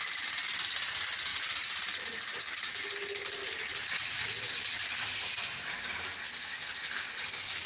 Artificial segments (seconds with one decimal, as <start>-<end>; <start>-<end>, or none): 1.3-2.4

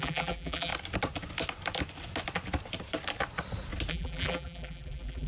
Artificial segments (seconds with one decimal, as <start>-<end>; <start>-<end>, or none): 0.0-0.7; 3.9-5.3

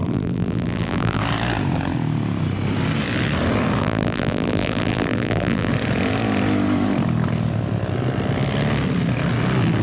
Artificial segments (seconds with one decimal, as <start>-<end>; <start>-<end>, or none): 0.0-1.2; 3.8-5.7